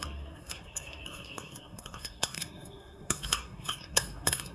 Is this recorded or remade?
remade